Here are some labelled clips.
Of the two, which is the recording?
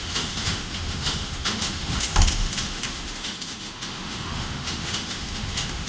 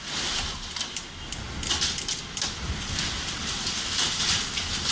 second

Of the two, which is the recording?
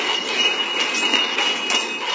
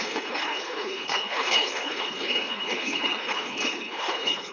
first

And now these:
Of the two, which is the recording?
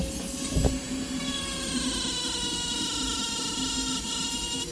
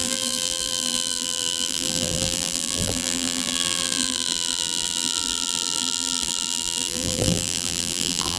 first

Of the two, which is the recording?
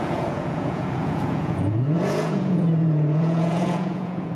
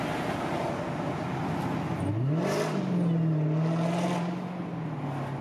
second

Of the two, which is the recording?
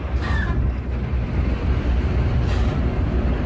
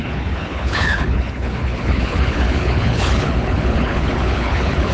first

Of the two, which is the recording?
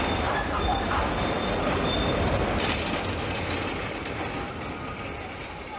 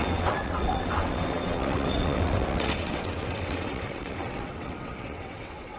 first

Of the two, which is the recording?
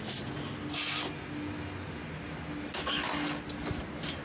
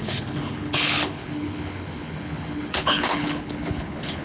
first